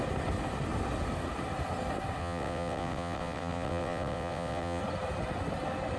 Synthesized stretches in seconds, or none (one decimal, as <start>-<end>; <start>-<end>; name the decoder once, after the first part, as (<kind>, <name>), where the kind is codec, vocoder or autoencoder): 2.2-4.8 (vocoder, WaveNeXt)

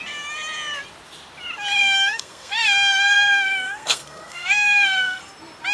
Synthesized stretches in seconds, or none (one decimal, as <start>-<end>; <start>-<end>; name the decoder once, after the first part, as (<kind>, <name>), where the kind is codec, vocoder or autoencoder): 1.8-5.2 (codec, SNAC)

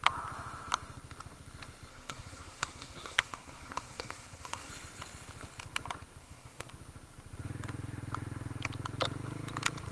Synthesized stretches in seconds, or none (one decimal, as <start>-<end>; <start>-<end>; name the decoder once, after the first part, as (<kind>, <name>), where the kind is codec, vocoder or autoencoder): 1.9-4.7 (codec, SNAC); 6.2-6.7

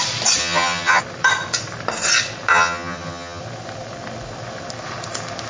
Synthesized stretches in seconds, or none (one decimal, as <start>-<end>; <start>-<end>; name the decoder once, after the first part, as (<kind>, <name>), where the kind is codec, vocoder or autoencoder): 0.4-1.0 (vocoder, HiFi-GAN); 2.5-3.4

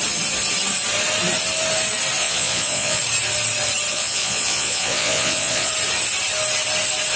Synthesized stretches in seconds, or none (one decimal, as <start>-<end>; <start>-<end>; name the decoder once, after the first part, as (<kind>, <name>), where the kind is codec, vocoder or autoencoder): 2.2-3.0 (vocoder, Vocos); 3.9-5.7

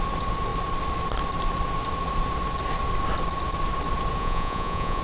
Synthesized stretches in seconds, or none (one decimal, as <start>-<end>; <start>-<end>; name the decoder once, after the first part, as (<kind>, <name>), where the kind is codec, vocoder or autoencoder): 4.2-5.0 (vocoder, Vocos)

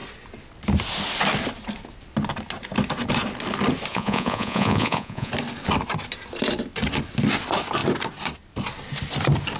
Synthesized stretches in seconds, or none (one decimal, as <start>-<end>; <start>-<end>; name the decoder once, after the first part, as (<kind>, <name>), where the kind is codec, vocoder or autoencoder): 3.9-5.3 (vocoder, Vocos)

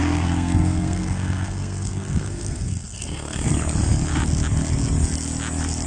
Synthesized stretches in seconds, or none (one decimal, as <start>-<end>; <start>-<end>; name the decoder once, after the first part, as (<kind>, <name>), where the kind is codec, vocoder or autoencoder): 0.0-3.5 (codec, SNAC)